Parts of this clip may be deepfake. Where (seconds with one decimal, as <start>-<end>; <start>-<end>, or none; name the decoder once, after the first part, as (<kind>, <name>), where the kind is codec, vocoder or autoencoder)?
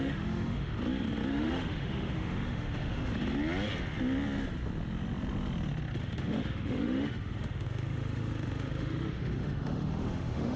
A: 0.0-0.7 (autoencoder, DAC-VAE); 1.3-3.1; 6.0-10.6